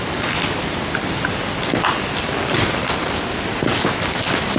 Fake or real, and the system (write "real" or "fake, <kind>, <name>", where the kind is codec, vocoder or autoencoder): real